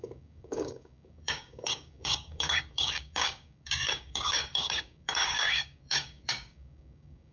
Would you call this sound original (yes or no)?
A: no